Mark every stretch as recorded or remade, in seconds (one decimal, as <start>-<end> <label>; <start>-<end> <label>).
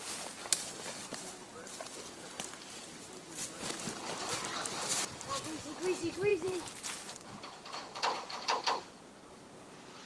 0.0-6.3 recorded; 6.3-10.1 remade